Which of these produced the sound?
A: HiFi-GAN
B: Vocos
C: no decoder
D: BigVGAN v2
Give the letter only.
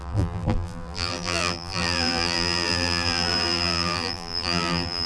D